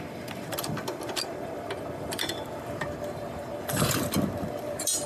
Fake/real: fake